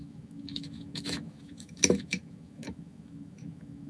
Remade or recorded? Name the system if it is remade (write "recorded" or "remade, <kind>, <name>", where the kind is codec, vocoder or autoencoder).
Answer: remade, autoencoder, DAC-VAE